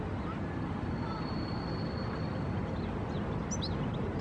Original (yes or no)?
yes